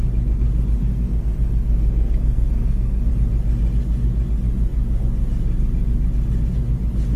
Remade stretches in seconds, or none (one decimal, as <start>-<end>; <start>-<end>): 0.8-3.1